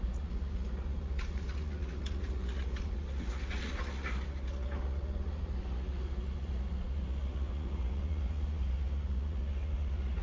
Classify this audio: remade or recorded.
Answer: remade